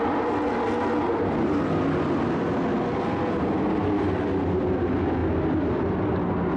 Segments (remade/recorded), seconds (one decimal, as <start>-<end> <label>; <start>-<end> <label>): 0.0-6.6 recorded